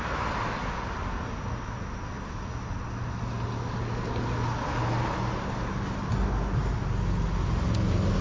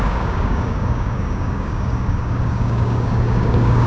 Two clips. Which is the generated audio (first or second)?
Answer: second